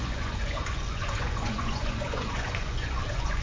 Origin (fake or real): fake